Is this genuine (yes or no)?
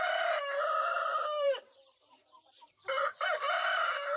no